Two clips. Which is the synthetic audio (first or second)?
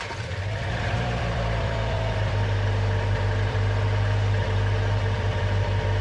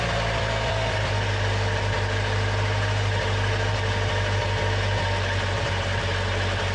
first